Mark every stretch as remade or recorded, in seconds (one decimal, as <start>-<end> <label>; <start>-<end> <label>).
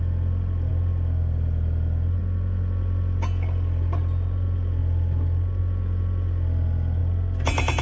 0.0-7.8 recorded